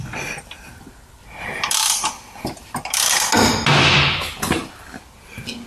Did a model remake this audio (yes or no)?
no